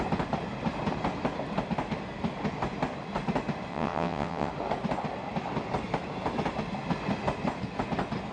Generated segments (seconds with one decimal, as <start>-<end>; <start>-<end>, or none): 3.7-4.5